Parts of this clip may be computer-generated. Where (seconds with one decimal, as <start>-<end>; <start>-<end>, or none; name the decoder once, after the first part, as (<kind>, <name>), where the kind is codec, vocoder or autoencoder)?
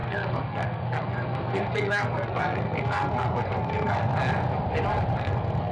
0.0-4.1 (codec, SNAC); 5.2-5.7